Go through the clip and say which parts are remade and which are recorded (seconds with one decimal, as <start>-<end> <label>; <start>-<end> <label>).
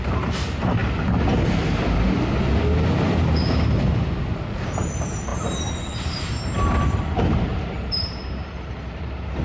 0.0-0.8 remade; 0.8-4.2 recorded; 4.2-9.4 remade